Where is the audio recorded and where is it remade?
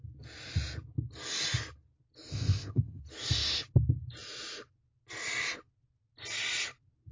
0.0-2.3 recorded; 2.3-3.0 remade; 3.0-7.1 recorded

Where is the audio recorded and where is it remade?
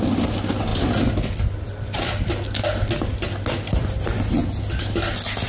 0.0-5.5 recorded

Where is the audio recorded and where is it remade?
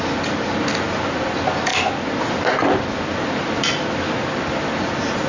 0.0-5.3 recorded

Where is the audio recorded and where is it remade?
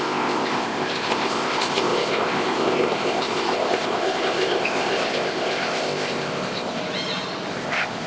0.0-6.8 remade; 6.8-7.5 recorded; 7.5-8.1 remade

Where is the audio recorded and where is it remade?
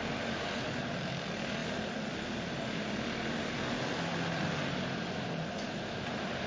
0.0-6.5 recorded